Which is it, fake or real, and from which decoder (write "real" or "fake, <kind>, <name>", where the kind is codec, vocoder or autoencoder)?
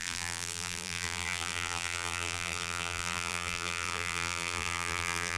fake, vocoder, BigVGAN v2